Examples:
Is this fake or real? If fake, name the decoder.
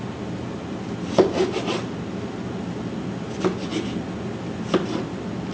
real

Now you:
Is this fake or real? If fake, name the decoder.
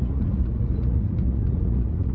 fake, vocoder, Vocos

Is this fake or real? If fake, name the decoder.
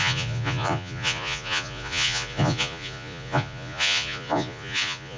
fake, vocoder, Vocos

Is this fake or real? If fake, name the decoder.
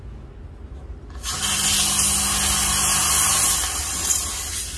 real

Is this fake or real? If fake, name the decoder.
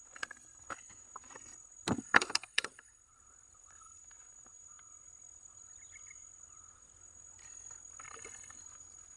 fake, vocoder, BigVGAN v2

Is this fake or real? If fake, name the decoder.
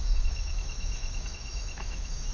fake, autoencoder, DAC-VAE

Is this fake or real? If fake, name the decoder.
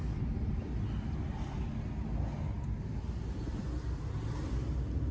real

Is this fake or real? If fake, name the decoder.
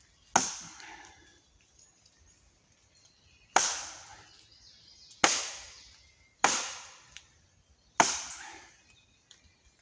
real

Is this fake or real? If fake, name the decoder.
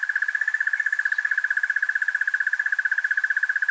real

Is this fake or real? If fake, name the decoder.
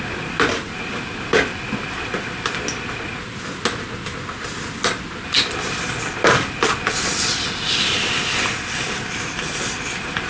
real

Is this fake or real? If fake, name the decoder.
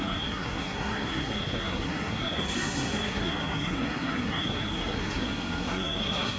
fake, codec, SNAC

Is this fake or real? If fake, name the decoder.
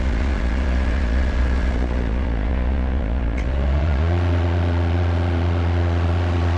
fake, vocoder, Vocos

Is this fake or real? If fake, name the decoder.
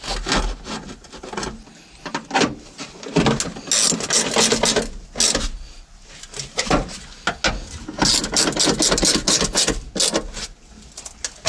real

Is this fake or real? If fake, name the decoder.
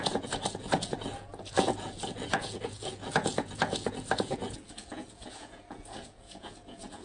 fake, vocoder, Vocos